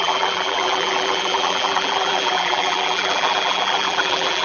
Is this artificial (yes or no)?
yes